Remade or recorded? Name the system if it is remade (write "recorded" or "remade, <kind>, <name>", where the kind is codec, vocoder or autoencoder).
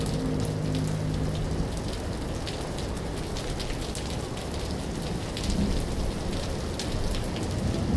recorded